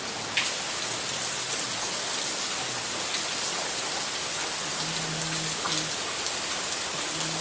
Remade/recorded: recorded